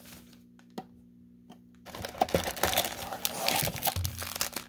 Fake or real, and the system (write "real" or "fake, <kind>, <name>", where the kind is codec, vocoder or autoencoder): real